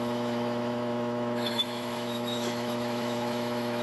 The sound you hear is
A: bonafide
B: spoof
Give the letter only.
B